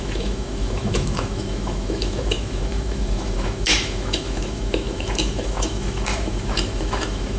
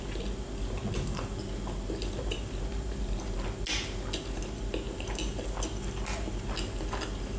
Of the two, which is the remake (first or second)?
first